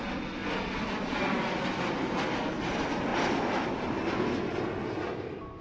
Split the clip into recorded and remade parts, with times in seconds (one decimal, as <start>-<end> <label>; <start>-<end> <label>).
0.0-5.6 recorded